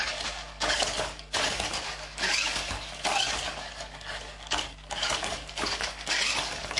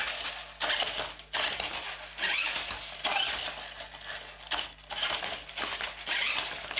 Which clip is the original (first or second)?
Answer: second